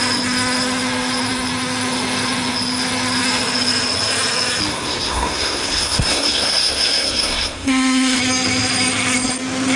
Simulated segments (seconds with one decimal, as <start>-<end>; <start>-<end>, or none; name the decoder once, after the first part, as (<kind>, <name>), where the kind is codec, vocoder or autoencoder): 4.7-8.2 (codec, SNAC)